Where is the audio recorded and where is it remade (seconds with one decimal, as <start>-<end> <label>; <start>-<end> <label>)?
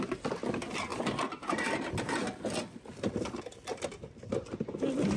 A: 0.0-0.9 recorded; 0.9-2.1 remade; 2.1-5.2 recorded